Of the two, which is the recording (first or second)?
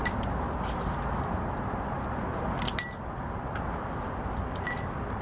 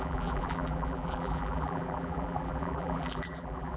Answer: first